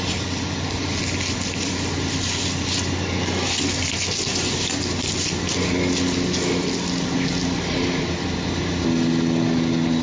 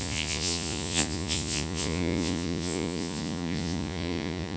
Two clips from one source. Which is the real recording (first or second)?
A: first